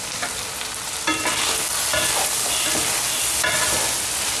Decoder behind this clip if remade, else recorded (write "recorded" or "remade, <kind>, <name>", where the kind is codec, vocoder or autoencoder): recorded